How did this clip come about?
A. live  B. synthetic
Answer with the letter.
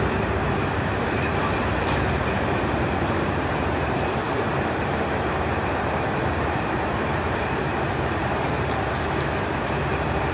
B